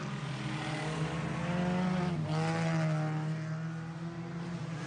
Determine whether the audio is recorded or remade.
recorded